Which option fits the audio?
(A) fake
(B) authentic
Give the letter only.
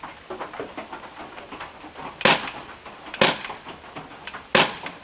B